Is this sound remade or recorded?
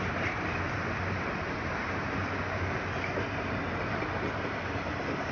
recorded